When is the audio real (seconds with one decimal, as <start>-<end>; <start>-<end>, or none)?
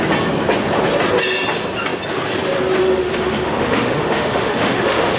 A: 0.0-2.8